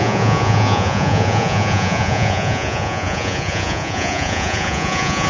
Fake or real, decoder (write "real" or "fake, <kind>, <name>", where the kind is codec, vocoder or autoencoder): fake, vocoder, Vocos